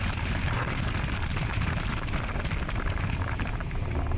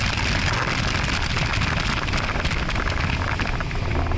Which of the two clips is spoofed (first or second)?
first